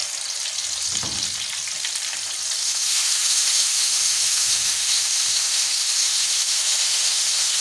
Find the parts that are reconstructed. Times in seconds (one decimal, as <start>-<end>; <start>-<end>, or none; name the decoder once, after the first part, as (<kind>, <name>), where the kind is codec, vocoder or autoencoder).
2.6-7.6 (autoencoder, DAC-VAE)